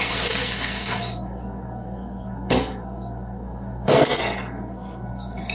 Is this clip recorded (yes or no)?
no